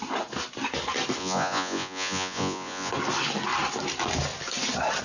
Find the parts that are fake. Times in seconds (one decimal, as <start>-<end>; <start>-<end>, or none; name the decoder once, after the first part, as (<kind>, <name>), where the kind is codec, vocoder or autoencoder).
1.2-2.9 (vocoder, Vocos)